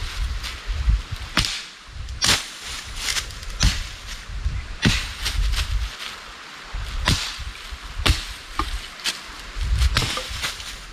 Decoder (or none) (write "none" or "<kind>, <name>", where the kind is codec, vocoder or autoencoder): none